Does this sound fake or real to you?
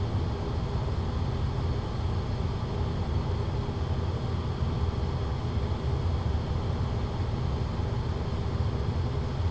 real